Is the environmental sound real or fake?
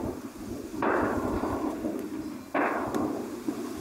real